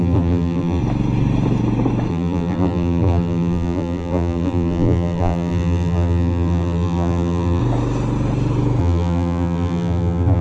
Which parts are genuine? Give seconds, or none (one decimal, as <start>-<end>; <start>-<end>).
0.8-2.1; 7.6-8.8